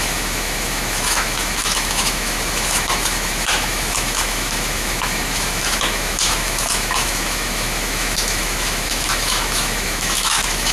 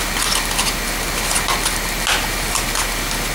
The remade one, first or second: first